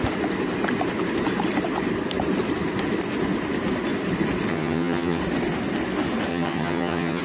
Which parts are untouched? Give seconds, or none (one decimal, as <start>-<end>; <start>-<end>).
0.0-4.5; 5.2-6.3